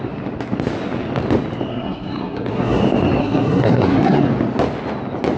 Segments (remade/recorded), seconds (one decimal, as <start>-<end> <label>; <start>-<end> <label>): 0.0-1.7 recorded; 1.7-2.8 remade; 2.8-3.2 recorded; 3.2-4.3 remade; 4.3-5.4 recorded